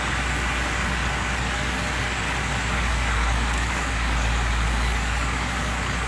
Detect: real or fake fake